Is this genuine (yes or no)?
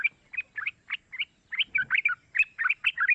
yes